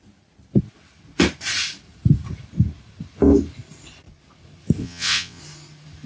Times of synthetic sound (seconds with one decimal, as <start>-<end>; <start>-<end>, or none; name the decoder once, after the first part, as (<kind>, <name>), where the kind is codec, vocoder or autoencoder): 4.8-5.4 (vocoder, WaveNeXt)